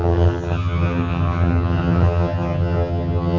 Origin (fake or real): fake